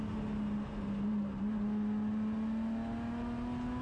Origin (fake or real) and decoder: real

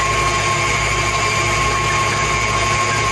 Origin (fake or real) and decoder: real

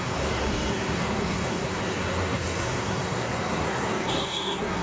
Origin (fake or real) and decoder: fake, codec, SNAC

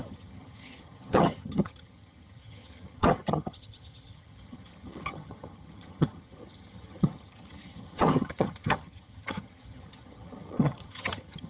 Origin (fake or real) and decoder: fake, vocoder, HiFi-GAN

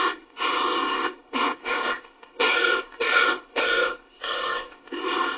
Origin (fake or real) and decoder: fake, codec, ZipCodec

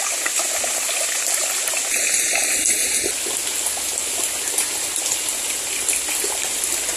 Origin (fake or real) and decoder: real